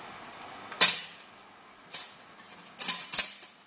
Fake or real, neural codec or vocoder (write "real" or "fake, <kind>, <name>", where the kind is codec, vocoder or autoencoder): real